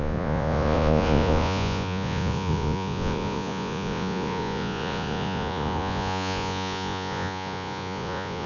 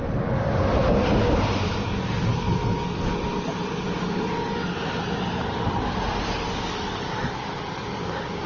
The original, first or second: second